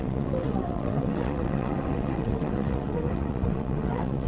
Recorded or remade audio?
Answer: remade